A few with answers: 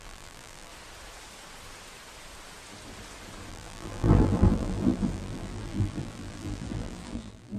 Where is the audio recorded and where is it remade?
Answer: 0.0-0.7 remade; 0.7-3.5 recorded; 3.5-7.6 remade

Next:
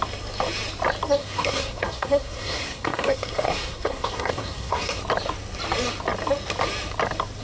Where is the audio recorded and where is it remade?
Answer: 0.0-1.2 recorded; 1.2-5.0 remade; 5.0-7.4 recorded

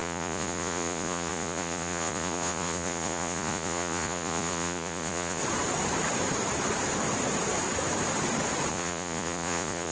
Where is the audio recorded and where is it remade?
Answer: 0.0-5.4 remade; 5.4-8.7 recorded; 8.7-9.9 remade